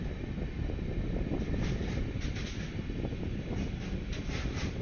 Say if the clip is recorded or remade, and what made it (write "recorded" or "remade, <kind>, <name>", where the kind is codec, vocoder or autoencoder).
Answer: recorded